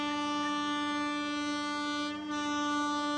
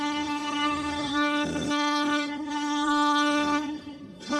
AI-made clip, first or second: second